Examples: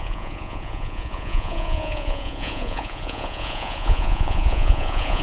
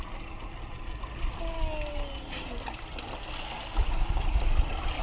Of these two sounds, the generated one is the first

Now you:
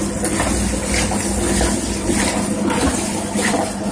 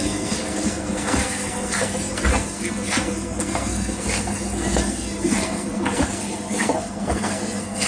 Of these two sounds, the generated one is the second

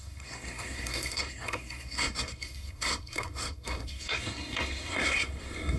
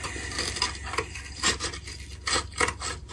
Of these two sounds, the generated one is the first